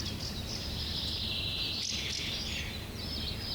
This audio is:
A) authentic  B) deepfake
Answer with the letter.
A